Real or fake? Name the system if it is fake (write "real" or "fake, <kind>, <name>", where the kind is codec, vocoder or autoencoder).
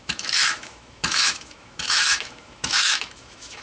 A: fake, autoencoder, DAC-VAE